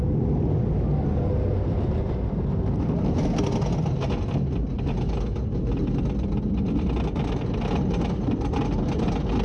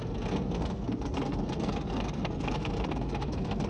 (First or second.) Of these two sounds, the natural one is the first